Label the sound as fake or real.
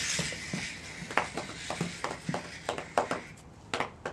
real